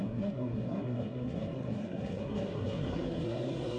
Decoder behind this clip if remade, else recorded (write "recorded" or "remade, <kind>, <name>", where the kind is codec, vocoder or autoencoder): remade, codec, SNAC